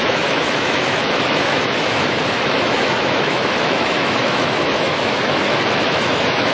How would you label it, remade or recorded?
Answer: remade